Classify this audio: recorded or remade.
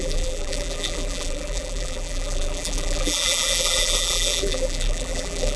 remade